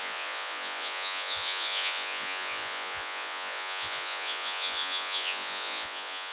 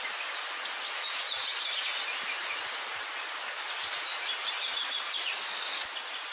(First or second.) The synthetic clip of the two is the first